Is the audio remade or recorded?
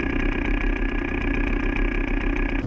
recorded